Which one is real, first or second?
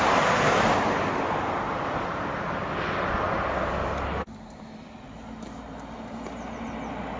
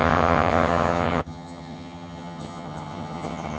first